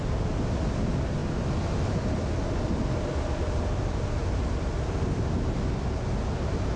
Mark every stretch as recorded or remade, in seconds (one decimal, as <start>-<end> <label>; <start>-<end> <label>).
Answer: 0.0-6.8 recorded